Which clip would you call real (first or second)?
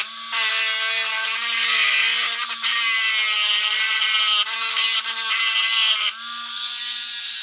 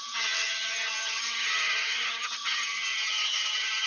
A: first